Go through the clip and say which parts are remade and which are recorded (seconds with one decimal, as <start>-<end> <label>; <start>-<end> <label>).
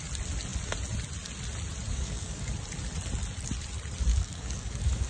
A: 0.0-1.9 recorded; 1.9-2.5 remade; 2.5-4.1 recorded; 4.1-5.1 remade